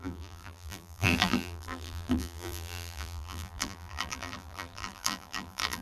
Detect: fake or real fake